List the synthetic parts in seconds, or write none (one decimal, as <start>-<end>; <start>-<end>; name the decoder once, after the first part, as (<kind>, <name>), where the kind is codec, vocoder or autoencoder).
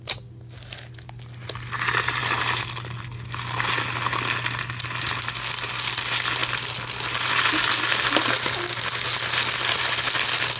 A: none